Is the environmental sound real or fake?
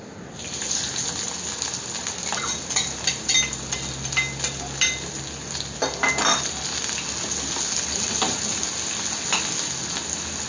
real